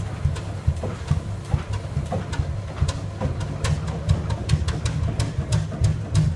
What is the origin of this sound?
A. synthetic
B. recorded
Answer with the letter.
B